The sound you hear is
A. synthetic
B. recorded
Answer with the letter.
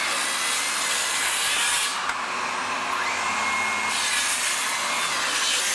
B